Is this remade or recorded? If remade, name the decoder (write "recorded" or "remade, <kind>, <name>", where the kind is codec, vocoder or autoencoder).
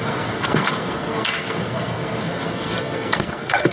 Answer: remade, codec, SNAC